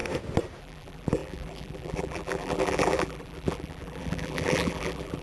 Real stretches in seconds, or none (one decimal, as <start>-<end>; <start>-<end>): 0.0-0.6